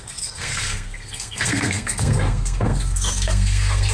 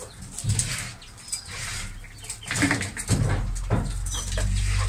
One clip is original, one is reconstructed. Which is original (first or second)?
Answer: second